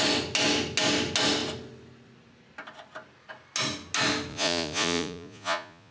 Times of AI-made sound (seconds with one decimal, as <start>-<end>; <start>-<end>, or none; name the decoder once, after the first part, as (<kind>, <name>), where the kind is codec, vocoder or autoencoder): 4.3-5.9 (vocoder, Vocos)